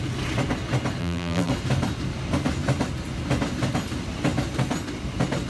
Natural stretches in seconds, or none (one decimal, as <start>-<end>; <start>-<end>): 0.0-1.0; 1.5-5.5